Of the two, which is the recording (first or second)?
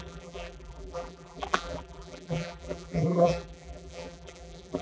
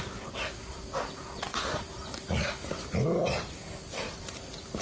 second